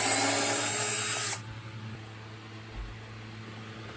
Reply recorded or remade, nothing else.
recorded